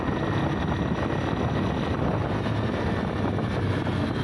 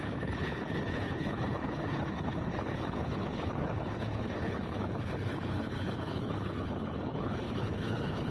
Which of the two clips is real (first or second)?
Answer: first